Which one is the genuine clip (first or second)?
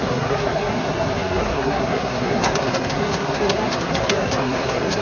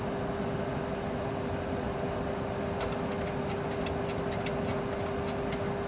second